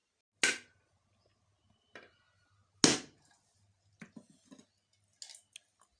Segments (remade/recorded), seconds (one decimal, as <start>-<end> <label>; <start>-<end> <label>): 0.0-6.0 recorded